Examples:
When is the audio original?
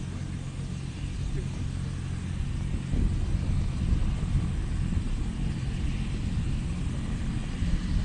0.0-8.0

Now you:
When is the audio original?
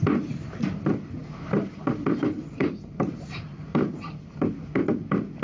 0.0-2.4; 4.4-5.4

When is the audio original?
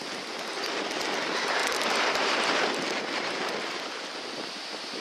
0.0-1.6; 4.6-5.0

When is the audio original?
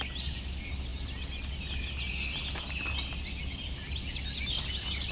0.0-5.1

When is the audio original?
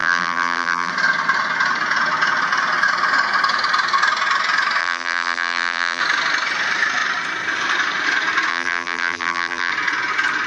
0.9-4.8; 6.0-8.5; 9.7-10.5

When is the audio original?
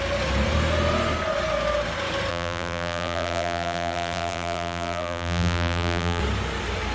0.0-2.3; 6.2-6.9